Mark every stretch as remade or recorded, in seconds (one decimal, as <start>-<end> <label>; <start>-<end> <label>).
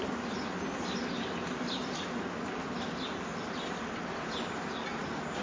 0.0-5.4 recorded